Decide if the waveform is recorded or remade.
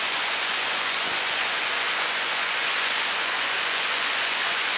remade